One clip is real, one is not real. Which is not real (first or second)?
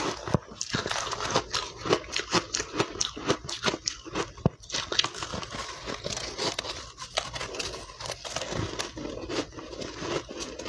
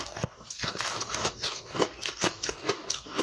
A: second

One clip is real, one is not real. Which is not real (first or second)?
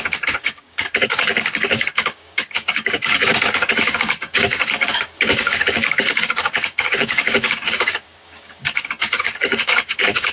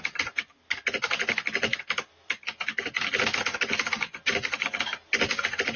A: first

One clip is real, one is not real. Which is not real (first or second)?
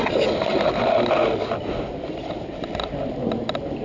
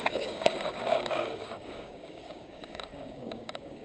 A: second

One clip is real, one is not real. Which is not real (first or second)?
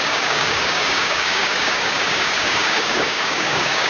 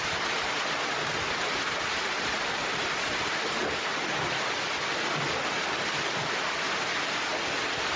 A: first